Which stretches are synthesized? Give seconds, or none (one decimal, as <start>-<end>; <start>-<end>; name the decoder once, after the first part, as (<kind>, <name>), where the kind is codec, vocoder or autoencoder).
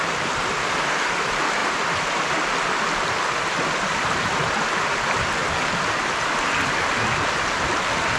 none